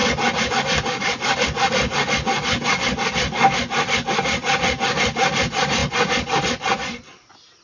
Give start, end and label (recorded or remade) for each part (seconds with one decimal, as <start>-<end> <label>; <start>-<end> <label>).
0.0-7.6 recorded